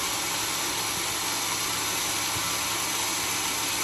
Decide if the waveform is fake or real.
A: real